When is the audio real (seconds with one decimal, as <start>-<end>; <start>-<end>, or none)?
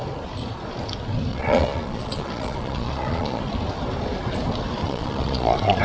0.0-1.3; 3.4-4.8